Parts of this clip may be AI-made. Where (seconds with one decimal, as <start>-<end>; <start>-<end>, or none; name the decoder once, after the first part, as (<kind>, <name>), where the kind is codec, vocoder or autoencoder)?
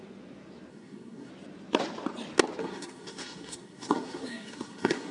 0.7-1.3 (codec, SNAC); 2.6-5.1